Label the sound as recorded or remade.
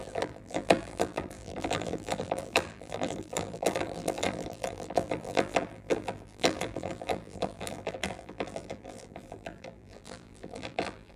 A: remade